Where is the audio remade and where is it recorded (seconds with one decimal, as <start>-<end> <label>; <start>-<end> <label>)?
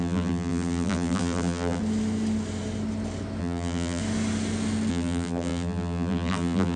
0.0-1.8 remade; 1.8-3.4 recorded; 3.4-4.0 remade; 4.0-4.9 recorded; 4.9-6.8 remade